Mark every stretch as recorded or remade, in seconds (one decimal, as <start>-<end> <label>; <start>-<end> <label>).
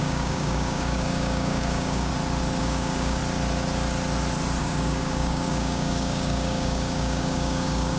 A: 0.0-2.1 remade; 2.1-2.6 recorded; 2.6-3.2 remade; 3.2-4.6 recorded; 4.6-8.0 remade